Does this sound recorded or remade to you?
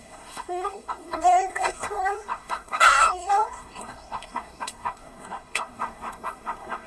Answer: remade